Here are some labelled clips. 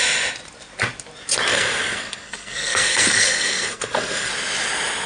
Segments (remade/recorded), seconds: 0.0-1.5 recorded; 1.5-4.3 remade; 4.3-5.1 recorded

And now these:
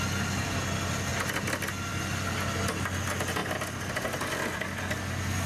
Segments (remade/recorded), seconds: 0.0-5.5 recorded

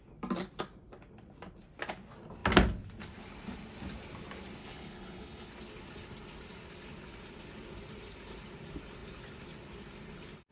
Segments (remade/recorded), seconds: 0.0-4.6 recorded; 4.6-5.5 remade; 5.5-10.5 recorded

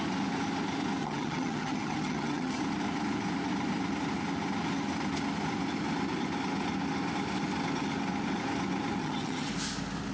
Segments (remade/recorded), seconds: 0.0-1.0 recorded; 1.0-2.6 remade; 2.6-9.0 recorded; 9.0-9.5 remade; 9.5-10.1 recorded

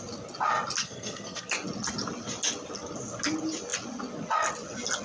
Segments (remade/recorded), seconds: 0.0-0.8 recorded; 0.8-1.5 remade; 1.5-5.0 recorded

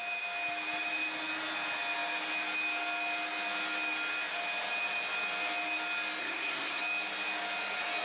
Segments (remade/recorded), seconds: 0.0-6.2 recorded; 6.2-6.8 remade; 6.8-8.0 recorded

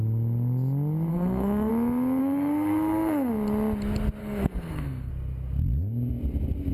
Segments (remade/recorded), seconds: 0.0-1.1 recorded; 1.1-1.7 remade; 1.7-2.2 recorded; 2.2-3.3 remade; 3.3-4.2 recorded; 4.2-5.1 remade; 5.1-6.7 recorded

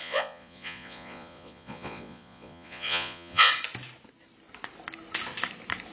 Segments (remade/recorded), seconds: 0.0-3.5 remade; 3.5-5.9 recorded